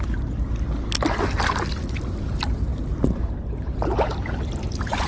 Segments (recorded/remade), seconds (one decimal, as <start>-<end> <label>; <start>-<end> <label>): 0.0-5.1 recorded